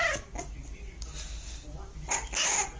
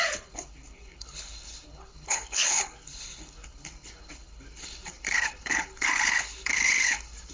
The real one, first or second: first